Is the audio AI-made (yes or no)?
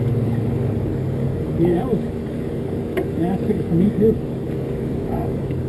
yes